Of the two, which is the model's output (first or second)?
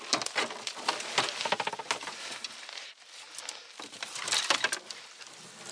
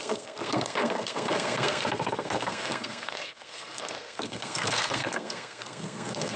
second